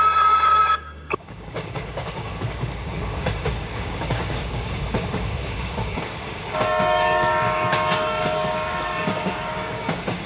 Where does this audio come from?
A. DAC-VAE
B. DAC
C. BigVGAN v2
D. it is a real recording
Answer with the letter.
B